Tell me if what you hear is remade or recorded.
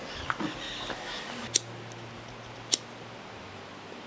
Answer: recorded